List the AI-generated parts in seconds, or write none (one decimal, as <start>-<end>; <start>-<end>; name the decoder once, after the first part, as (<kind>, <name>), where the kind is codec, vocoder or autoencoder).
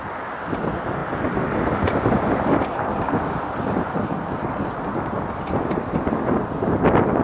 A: none